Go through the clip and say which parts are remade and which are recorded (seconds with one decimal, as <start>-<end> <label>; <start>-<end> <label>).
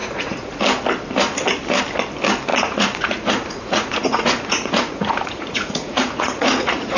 0.0-0.6 remade; 0.6-2.5 recorded; 2.5-7.0 remade